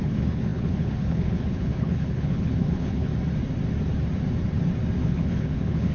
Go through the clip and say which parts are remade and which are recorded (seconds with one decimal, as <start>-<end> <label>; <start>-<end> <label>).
0.0-3.1 remade; 3.1-5.0 recorded; 5.0-5.9 remade